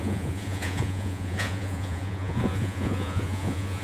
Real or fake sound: fake